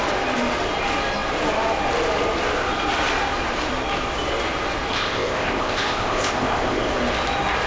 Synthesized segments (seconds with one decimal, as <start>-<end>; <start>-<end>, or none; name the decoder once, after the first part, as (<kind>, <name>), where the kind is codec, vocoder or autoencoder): 4.9-6.9 (codec, ZipCodec)